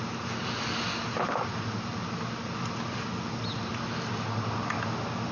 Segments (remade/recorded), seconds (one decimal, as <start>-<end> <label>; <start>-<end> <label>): 0.0-5.3 recorded